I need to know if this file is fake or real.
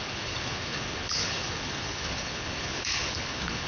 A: fake